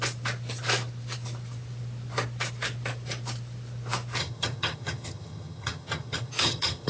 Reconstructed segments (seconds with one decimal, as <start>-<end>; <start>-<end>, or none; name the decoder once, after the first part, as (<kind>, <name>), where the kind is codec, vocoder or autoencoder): 4.2-6.9 (vocoder, HiFi-GAN)